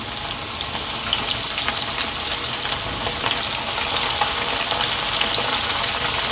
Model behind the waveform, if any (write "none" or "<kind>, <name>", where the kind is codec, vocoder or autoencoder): none